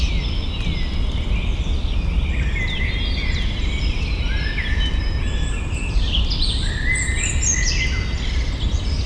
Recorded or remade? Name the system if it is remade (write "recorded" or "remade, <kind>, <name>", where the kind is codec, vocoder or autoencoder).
recorded